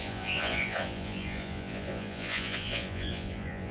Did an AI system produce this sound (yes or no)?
yes